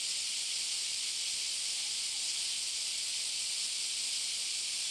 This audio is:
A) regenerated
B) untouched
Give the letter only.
B